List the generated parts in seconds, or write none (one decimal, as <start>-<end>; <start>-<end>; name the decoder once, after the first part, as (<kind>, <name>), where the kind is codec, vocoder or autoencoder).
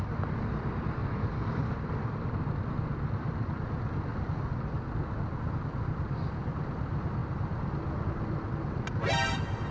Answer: 1.0-2.3 (vocoder, BigVGAN v2); 7.2-8.0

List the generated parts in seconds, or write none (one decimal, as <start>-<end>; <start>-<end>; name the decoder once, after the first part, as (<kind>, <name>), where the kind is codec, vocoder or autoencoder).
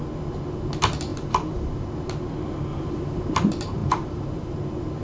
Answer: 1.1-1.6 (vocoder, BigVGAN v2); 2.7-3.3; 3.8-4.5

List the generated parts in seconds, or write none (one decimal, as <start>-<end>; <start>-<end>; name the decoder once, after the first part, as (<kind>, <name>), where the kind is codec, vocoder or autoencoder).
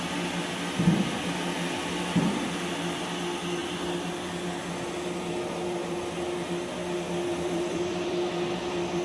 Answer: 7.3-8.3 (vocoder, BigVGAN v2)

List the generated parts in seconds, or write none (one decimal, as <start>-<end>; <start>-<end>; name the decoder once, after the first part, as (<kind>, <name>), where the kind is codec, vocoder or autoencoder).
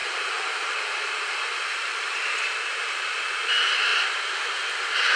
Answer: 0.0-3.1 (vocoder, BigVGAN v2)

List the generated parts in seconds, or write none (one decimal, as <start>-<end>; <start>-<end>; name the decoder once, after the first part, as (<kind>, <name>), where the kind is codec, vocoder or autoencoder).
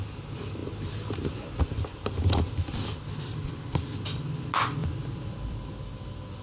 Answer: none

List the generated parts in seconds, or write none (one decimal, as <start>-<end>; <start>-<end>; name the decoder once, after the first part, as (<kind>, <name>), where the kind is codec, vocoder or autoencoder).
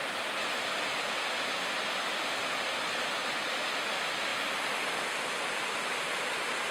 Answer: none